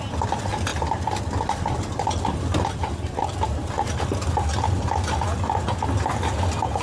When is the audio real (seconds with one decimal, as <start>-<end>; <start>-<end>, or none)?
0.0-6.8